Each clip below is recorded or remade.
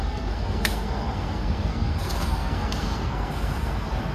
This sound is remade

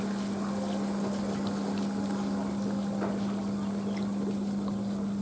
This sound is recorded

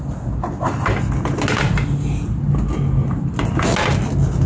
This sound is recorded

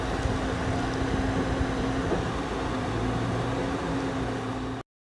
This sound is recorded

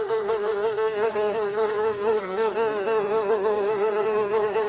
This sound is remade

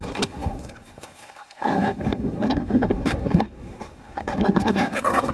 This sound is remade